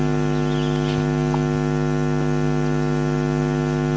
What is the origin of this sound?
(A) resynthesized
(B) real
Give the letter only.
B